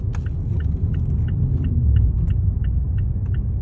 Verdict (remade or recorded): recorded